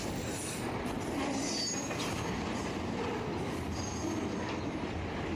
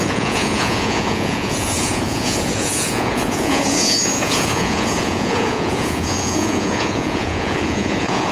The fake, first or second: second